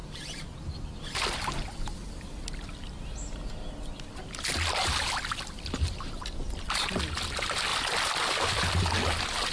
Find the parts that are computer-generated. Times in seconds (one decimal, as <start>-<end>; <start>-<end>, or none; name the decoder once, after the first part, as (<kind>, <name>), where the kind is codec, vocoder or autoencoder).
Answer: 0.0-0.9 (vocoder, BigVGAN v2); 7.7-8.8